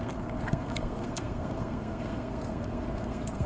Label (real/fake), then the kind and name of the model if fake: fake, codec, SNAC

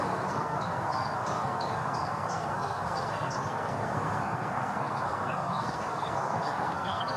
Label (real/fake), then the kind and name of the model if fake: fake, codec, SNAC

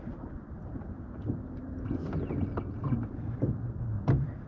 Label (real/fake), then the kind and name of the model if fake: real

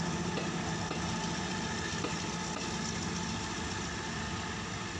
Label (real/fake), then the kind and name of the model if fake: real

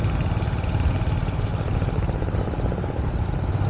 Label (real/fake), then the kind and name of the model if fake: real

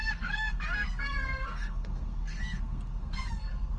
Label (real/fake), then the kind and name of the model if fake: fake, codec, SNAC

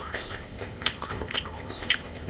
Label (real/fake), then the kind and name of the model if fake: fake, codec, ZipCodec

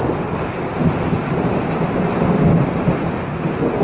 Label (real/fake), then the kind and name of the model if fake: real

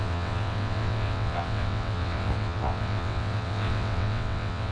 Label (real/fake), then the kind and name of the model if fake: fake, vocoder, WaveNeXt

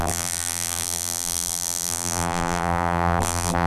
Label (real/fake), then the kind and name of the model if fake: fake, vocoder, BigVGAN v2